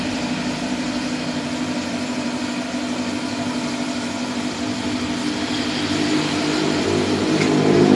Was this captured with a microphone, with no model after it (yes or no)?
no